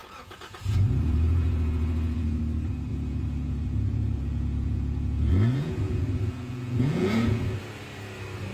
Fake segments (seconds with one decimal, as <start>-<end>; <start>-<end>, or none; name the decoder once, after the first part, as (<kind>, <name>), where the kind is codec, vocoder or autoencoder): 0.0-2.4 (vocoder, Vocos); 2.9-7.4